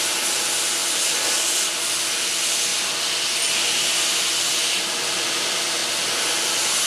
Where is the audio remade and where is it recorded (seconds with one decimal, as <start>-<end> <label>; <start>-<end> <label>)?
0.0-6.9 recorded